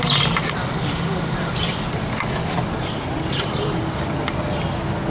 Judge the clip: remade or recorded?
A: recorded